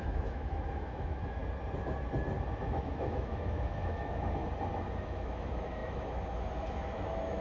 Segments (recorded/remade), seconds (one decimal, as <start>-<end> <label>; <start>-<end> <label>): 0.0-1.4 remade; 1.4-2.6 recorded; 2.6-4.4 remade; 4.4-5.0 recorded; 5.0-7.4 remade